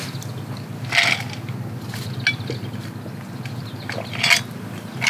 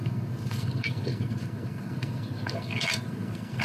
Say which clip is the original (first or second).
first